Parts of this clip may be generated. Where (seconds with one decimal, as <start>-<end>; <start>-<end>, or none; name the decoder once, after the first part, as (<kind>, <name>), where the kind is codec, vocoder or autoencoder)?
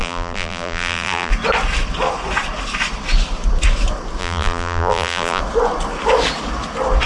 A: 0.0-1.3 (vocoder, BigVGAN v2); 4.2-5.4